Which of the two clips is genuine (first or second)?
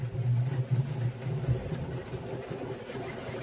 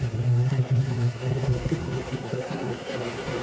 first